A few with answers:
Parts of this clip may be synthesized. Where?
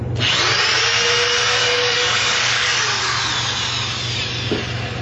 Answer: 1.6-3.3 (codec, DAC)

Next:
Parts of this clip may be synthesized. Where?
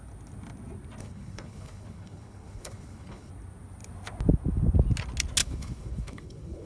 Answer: 1.0-3.3 (codec, HILCodec); 5.4-6.7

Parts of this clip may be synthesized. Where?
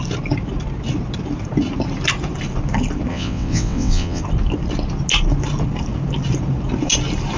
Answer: 3.1-4.2 (vocoder, WaveNeXt)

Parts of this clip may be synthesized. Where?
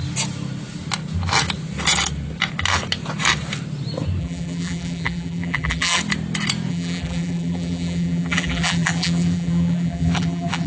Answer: 4.2-6.0 (vocoder, BigVGAN v2); 6.7-10.7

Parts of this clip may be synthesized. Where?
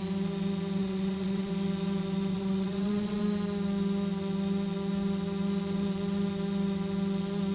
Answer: 0.8-1.5 (vocoder, WaveNeXt); 2.3-3.2